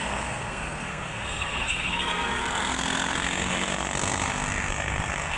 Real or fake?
fake